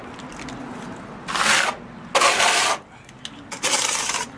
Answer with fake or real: real